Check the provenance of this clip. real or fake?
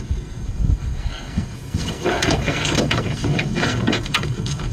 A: fake